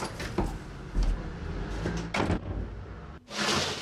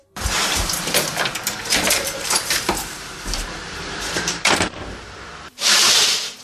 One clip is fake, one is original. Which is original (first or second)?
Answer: first